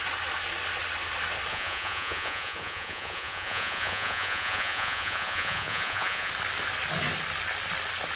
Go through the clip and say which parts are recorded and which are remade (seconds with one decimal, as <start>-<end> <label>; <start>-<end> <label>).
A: 0.0-1.5 recorded; 1.5-6.3 remade; 6.3-8.2 recorded